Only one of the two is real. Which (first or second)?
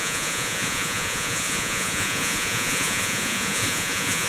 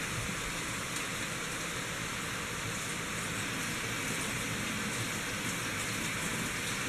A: second